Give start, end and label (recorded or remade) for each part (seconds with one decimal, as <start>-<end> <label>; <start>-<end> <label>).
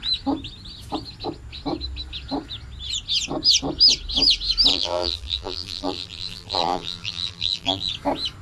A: 0.0-4.7 recorded; 4.7-7.9 remade; 7.9-8.4 recorded